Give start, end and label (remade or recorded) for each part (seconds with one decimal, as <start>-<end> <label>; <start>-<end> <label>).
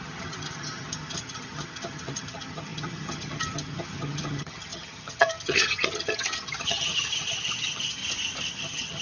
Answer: 0.0-8.0 remade; 8.0-8.5 recorded; 8.5-9.0 remade